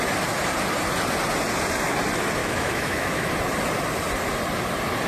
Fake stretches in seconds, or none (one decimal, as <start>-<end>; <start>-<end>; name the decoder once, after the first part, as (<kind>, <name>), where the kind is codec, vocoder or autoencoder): 2.4-3.3 (autoencoder, DAC-VAE)